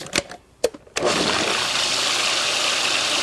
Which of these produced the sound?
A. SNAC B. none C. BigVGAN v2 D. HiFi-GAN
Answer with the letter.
B